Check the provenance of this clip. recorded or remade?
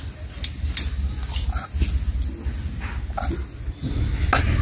recorded